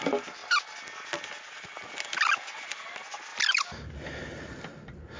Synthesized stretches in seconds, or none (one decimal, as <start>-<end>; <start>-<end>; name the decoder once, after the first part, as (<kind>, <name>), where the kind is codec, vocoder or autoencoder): none